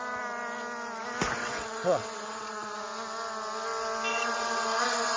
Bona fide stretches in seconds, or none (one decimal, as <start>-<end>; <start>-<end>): 0.0-1.4; 2.8-4.1